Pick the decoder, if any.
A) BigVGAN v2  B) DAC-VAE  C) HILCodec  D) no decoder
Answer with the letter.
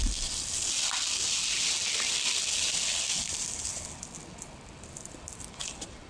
D